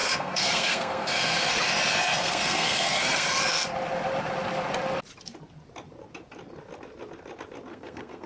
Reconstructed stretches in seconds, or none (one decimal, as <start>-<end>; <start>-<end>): 0.0-1.6; 2.2-3.3; 7.7-8.3